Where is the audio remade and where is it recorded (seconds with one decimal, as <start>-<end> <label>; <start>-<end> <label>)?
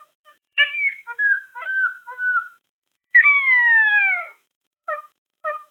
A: 0.0-5.7 remade